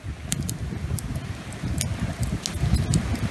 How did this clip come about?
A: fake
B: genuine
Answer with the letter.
B